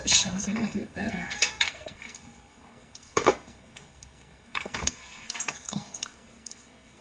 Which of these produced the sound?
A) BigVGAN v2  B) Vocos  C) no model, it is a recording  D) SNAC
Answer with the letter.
D